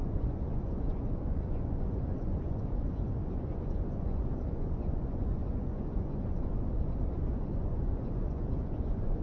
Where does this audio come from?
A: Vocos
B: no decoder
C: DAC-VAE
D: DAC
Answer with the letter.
A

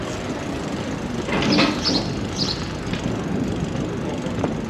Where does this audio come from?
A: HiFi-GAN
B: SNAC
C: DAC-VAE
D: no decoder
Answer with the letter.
D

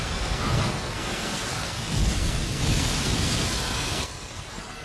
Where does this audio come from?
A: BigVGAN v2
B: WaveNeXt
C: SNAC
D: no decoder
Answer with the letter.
C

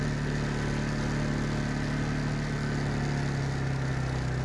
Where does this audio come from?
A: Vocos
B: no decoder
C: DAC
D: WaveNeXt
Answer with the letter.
B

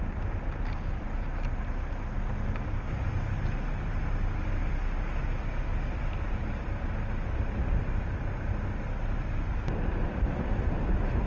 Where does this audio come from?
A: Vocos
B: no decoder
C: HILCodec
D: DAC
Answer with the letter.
B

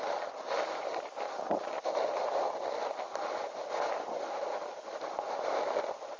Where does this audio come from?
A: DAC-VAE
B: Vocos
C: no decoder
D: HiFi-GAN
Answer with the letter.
C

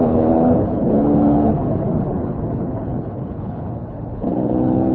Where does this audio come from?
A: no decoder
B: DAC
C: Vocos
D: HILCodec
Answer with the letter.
D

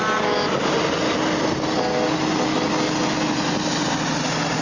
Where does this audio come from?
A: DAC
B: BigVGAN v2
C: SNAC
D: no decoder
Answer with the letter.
D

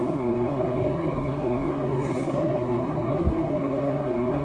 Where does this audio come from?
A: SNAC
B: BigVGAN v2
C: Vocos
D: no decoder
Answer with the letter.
A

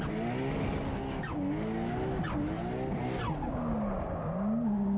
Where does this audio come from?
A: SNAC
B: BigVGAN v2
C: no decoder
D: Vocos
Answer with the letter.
C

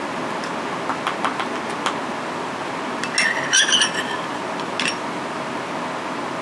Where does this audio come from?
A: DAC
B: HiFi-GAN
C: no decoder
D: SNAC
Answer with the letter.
C